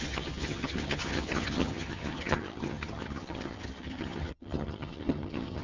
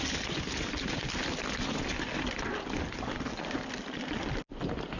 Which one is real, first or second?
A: second